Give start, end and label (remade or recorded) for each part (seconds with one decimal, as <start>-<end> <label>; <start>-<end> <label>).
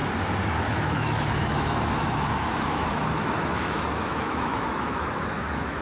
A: 0.0-0.7 recorded; 0.7-5.8 remade